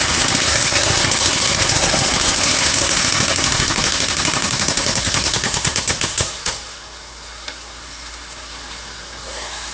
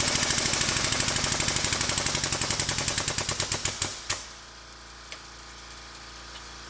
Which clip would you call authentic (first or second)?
second